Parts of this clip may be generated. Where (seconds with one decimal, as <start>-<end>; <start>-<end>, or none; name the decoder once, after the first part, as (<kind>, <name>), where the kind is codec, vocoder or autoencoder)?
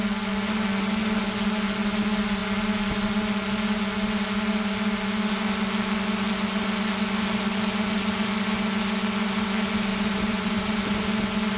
9.9-11.0 (vocoder, BigVGAN v2)